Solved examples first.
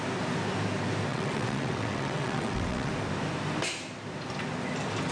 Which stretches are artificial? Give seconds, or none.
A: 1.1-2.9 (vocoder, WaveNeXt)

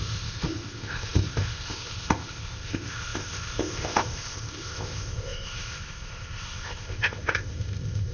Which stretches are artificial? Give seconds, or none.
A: 0.0-8.1 (codec, ZipCodec)

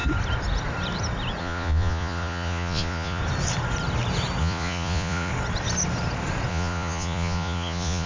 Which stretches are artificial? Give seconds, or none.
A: 1.4-3.2 (vocoder, Vocos); 4.4-5.3; 6.5-8.1

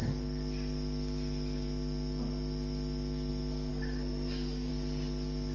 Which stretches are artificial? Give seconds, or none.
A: 3.7-4.7 (codec, SNAC)

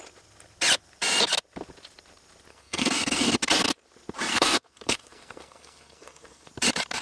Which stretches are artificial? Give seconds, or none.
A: 2.5-3.3 (codec, SNAC); 4.3-6.5

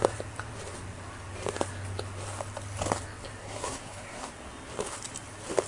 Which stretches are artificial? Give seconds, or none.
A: 3.4-4.3 (codec, SNAC)

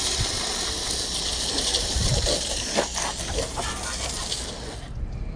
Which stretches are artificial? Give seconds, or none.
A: none

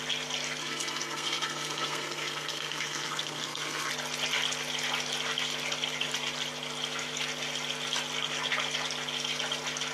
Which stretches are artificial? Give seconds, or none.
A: 0.6-3.9 (codec, SNAC)